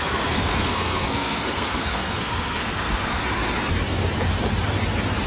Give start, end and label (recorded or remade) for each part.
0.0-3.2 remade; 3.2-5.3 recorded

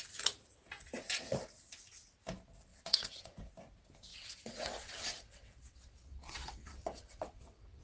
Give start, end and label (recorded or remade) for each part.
0.0-2.7 recorded; 2.7-3.5 remade; 3.5-4.1 recorded; 4.1-7.8 remade

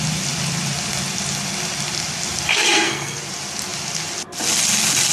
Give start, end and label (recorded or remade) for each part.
0.0-2.5 recorded; 2.5-3.2 remade; 3.2-5.1 recorded

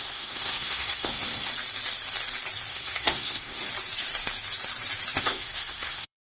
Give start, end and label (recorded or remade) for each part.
0.0-1.5 remade; 1.5-2.7 recorded; 2.7-3.6 remade; 3.6-5.2 recorded; 5.2-6.3 remade

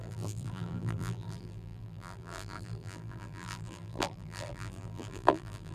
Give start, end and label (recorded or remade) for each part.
0.0-5.7 remade

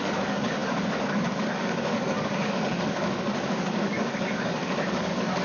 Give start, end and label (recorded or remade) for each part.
0.0-5.4 remade

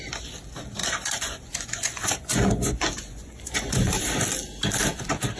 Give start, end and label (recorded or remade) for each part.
0.0-0.8 recorded; 0.8-4.0 remade; 4.0-5.4 recorded

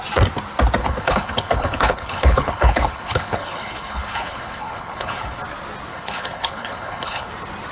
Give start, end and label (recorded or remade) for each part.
0.0-0.8 recorded; 0.8-5.4 remade; 5.4-5.9 recorded; 5.9-7.3 remade; 7.3-7.7 recorded